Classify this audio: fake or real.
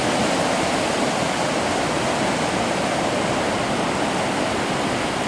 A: real